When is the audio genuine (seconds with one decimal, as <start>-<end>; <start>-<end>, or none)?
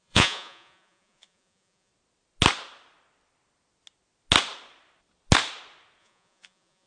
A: 1.9-6.0